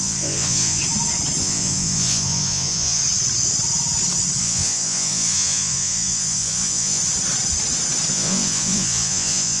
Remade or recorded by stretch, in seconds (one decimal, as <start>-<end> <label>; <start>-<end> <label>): 0.0-0.8 remade; 0.8-1.4 recorded; 1.4-3.0 remade; 3.0-4.4 recorded; 4.4-7.0 remade; 7.0-8.1 recorded; 8.1-9.6 remade